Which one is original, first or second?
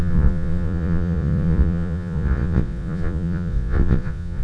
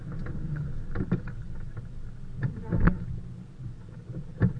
second